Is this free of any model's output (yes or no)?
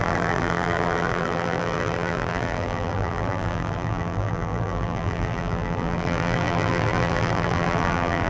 no